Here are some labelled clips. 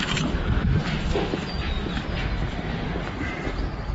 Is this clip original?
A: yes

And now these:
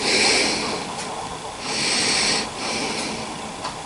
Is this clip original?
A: yes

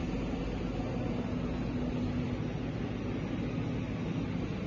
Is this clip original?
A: yes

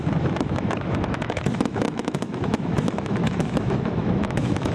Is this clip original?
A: no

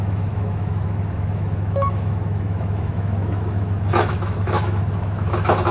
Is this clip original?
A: no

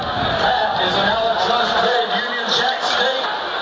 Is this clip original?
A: yes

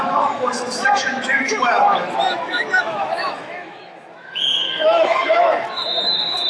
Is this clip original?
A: no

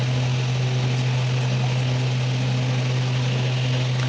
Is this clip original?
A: yes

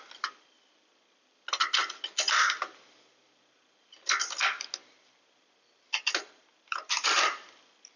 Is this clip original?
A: yes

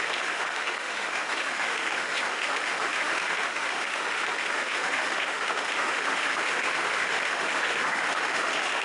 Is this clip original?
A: no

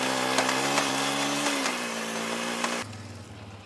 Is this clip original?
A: yes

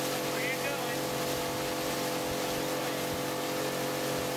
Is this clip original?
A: yes